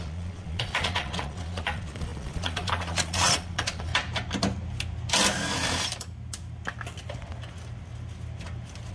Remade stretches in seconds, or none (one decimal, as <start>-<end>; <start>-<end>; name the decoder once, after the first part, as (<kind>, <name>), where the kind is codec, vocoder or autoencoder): 0.0-3.9 (vocoder, Vocos)